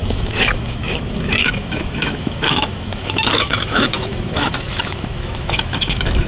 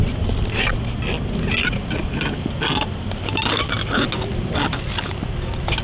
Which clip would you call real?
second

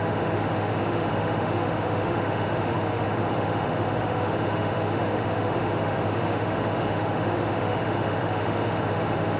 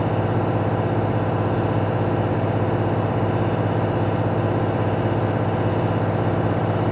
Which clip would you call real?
second